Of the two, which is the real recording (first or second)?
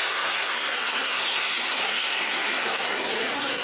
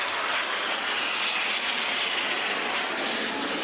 second